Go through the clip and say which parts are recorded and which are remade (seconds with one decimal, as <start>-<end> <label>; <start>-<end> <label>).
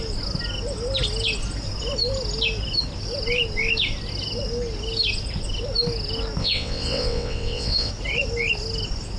0.0-6.4 recorded; 6.4-7.9 remade; 7.9-9.2 recorded